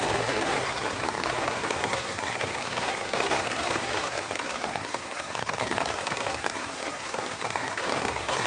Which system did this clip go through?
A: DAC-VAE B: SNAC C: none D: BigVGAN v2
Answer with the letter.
B